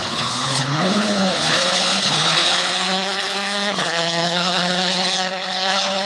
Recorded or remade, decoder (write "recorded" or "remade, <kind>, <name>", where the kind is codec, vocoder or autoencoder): remade, codec, HILCodec